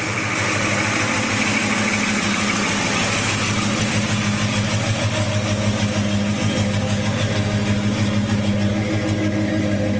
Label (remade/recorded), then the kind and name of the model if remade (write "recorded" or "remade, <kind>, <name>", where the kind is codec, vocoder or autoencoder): recorded